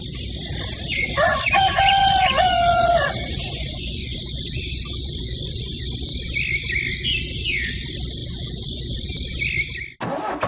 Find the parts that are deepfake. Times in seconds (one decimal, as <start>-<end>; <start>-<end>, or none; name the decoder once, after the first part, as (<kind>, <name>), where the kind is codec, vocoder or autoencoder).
0.9-4.6 (vocoder, Vocos); 5.0-5.8; 8.2-8.9